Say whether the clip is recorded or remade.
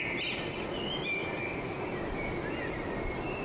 recorded